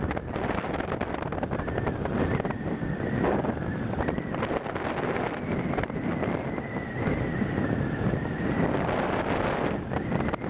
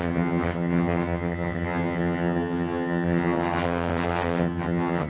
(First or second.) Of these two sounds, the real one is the first